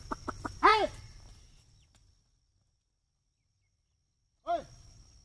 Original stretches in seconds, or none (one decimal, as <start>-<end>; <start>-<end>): 0.0-5.2